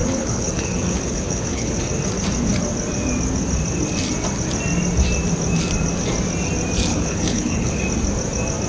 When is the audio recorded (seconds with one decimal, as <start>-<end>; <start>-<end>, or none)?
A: 1.8-6.9; 7.8-8.7